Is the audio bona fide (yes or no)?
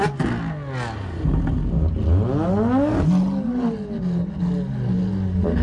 yes